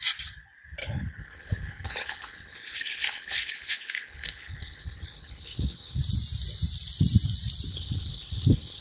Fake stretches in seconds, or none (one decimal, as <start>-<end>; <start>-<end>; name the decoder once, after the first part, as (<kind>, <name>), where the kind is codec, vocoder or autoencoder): 0.8-6.0 (codec, HILCodec); 7.7-8.8

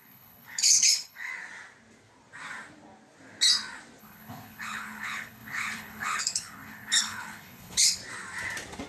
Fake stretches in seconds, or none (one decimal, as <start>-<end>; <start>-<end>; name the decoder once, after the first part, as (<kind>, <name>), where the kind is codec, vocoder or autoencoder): 0.0-1.3 (codec, HILCodec); 4.0-8.0